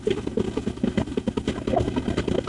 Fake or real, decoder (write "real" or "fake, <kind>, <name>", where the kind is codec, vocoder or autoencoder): real